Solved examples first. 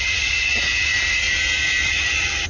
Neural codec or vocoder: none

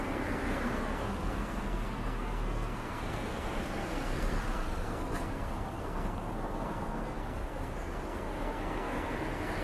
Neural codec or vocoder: codec, SNAC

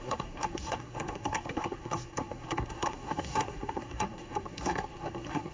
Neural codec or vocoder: codec, SNAC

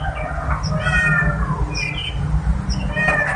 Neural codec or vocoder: none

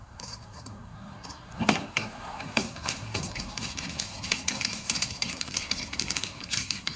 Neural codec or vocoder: codec, SNAC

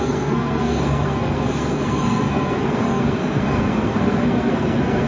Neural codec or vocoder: codec, SNAC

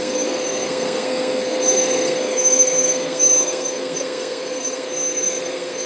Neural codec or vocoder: codec, SNAC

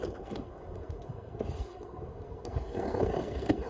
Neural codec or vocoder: codec, SNAC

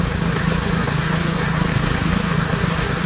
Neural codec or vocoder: codec, SNAC